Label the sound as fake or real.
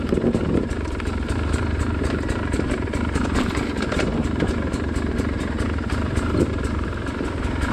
fake